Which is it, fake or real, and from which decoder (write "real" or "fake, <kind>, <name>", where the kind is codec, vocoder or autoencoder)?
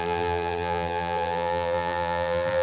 fake, vocoder, BigVGAN v2